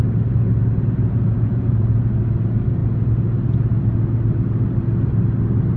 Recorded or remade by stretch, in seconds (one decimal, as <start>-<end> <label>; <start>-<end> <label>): 0.0-1.0 recorded; 1.0-2.1 remade; 2.1-5.8 recorded